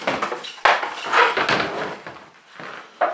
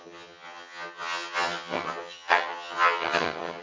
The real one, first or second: first